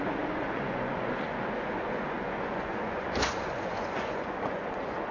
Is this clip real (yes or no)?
no